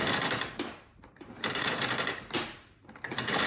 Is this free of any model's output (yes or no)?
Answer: no